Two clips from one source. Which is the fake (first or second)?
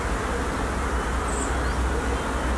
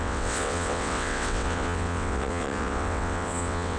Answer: second